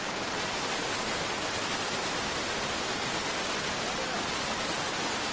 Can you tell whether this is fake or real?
real